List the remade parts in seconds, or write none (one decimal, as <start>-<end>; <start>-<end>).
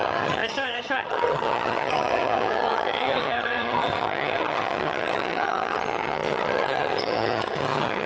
0.0-8.1